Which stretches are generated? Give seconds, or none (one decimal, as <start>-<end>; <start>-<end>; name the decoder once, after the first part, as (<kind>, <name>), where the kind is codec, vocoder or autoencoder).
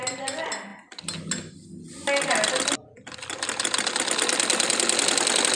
none